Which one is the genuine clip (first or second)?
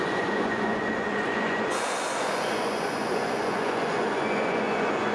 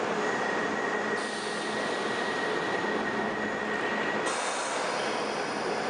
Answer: second